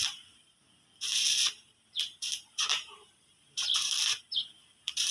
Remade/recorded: remade